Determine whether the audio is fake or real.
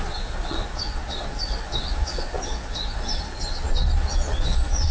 fake